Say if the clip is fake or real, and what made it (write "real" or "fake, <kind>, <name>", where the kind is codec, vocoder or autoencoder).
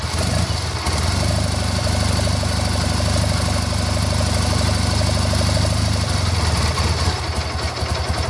real